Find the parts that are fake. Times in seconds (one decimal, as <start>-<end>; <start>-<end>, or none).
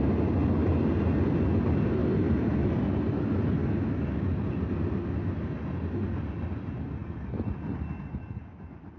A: none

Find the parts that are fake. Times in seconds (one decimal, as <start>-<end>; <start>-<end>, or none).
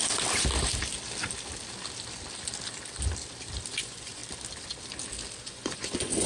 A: 3.8-4.2; 5.4-6.3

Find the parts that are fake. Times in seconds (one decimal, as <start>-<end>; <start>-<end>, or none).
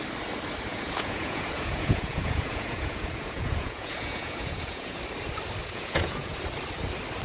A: 0.7-5.0; 5.6-6.4